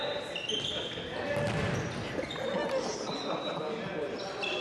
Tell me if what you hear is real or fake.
real